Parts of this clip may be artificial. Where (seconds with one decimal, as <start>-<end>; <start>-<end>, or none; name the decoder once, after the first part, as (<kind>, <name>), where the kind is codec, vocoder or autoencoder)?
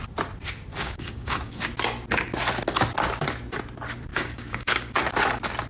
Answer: 0.7-1.7 (codec, DAC); 4.1-5.0